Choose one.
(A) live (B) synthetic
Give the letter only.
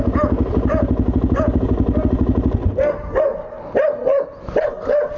A